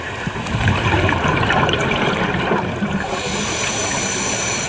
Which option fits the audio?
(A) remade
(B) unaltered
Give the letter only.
A